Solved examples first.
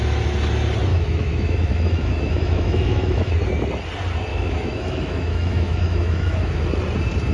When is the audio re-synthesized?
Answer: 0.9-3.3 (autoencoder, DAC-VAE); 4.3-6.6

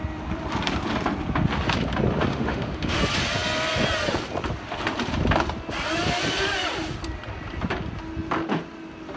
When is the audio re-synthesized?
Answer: 2.3-3.0 (autoencoder, DAC-VAE)

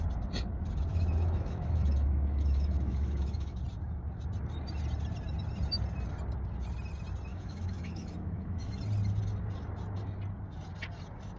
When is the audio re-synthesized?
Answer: 0.9-3.6 (autoencoder, DAC-VAE); 7.3-8.8

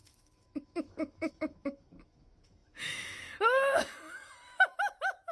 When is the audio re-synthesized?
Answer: 0.0-5.3 (autoencoder, DAC-VAE)